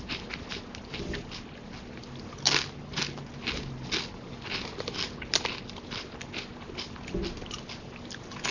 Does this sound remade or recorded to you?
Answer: recorded